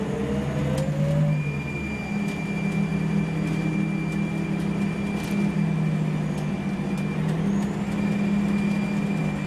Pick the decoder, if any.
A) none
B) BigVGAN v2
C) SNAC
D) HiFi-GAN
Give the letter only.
A